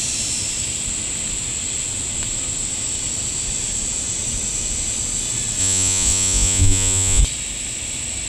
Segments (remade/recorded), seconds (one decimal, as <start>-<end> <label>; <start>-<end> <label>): 0.0-5.6 recorded; 5.6-7.2 remade; 7.2-8.3 recorded